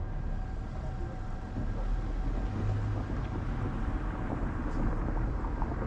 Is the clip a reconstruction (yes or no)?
no